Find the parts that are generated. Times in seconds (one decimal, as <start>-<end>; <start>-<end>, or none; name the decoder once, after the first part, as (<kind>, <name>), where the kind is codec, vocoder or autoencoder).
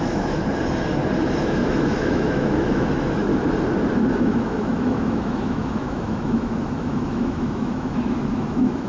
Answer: 0.0-0.4 (autoencoder, DAC-VAE); 1.4-3.3; 4.2-8.9